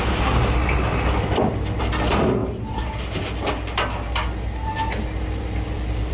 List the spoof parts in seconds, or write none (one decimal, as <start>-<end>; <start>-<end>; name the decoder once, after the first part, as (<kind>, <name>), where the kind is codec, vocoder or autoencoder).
none